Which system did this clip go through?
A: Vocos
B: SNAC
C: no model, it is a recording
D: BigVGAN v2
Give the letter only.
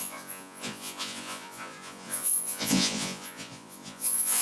A